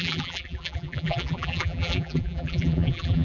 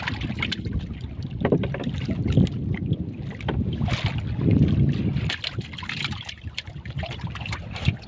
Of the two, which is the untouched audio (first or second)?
second